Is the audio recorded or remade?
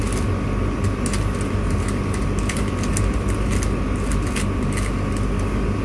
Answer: recorded